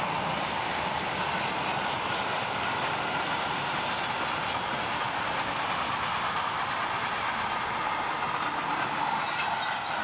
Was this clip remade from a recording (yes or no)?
no